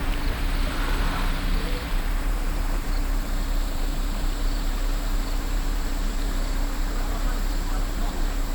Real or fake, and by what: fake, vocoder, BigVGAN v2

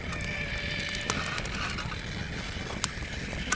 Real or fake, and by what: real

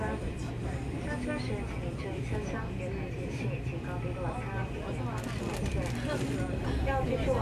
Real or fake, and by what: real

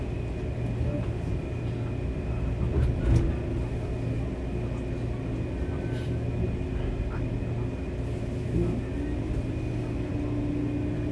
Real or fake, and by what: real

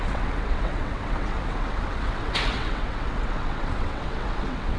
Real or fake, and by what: fake, vocoder, WaveNeXt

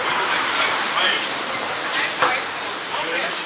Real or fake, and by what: fake, vocoder, BigVGAN v2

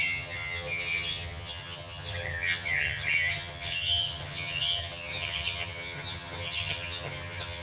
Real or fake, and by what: fake, vocoder, HiFi-GAN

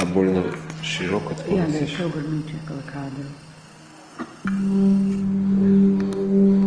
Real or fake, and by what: real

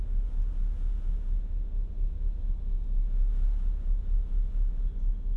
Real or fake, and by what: real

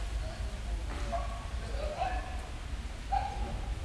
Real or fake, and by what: real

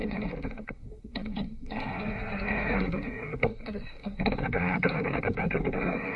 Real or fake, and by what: fake, codec, SNAC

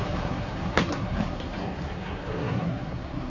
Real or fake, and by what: fake, codec, SNAC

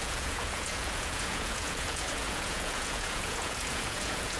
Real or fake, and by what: fake, vocoder, Vocos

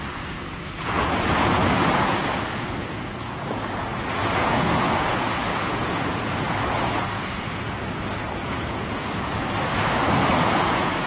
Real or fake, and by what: fake, vocoder, Vocos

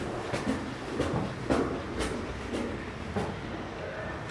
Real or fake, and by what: real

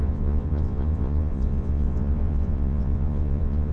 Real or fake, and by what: fake, vocoder, Vocos